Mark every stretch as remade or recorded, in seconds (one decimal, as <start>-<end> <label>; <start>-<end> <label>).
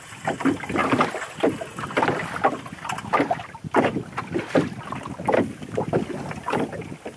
0.0-7.2 recorded